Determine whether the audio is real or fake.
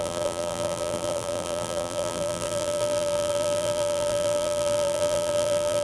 fake